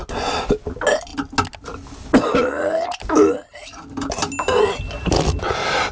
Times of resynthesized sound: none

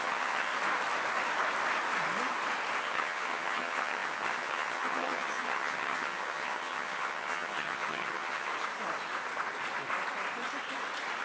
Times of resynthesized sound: 0.0-0.5 (vocoder, HiFi-GAN); 2.8-8.5

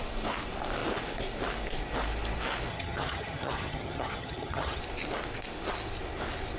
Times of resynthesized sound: 2.7-4.8 (vocoder, HiFi-GAN)